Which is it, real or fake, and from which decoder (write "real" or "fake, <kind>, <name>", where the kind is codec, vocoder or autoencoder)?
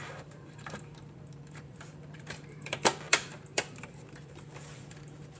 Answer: fake, vocoder, BigVGAN v2